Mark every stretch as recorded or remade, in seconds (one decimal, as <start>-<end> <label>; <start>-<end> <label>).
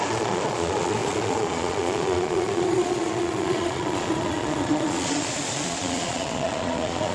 0.0-7.1 remade